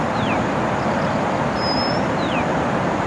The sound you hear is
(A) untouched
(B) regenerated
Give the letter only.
A